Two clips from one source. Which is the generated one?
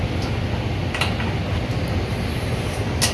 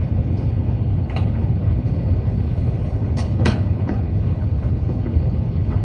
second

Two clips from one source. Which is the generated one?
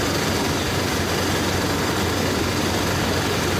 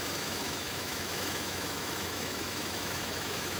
second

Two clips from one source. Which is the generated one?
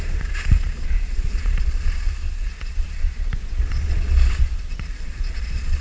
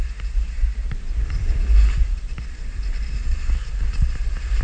first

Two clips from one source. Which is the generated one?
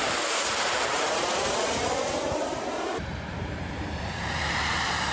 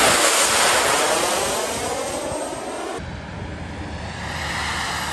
first